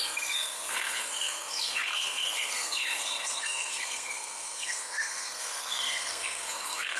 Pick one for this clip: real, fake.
fake